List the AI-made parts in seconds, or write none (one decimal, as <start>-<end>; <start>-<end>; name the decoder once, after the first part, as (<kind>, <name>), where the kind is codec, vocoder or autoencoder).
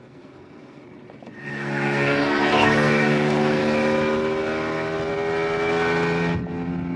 0.0-0.8 (codec, SNAC); 1.5-3.6